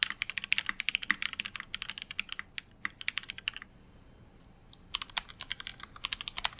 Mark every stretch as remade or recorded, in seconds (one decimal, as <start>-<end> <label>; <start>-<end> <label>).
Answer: 0.0-4.6 recorded; 4.6-5.3 remade; 5.3-6.6 recorded